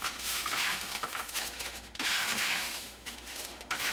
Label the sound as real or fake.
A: fake